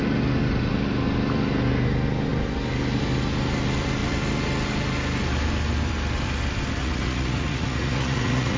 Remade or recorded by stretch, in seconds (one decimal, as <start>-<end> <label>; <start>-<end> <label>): 0.0-6.8 recorded; 6.8-8.6 remade